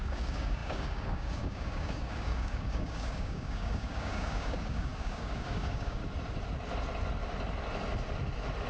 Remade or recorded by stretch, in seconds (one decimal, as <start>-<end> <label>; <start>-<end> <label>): 0.0-6.0 remade; 6.0-8.7 recorded

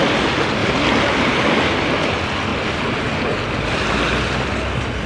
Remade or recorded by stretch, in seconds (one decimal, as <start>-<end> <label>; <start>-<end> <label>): 0.0-5.1 recorded